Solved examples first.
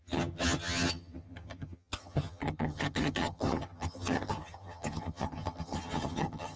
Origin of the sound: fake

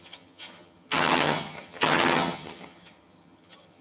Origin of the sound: fake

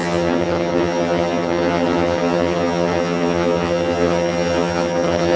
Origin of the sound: fake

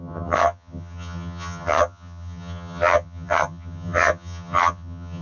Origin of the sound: fake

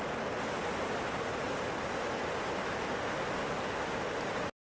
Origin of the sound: real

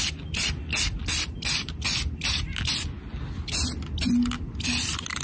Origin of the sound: real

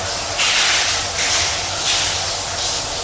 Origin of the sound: real